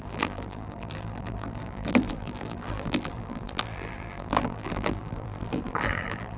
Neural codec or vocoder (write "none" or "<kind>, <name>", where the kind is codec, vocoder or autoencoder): vocoder, BigVGAN v2